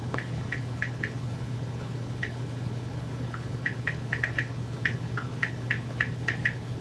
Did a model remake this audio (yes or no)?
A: yes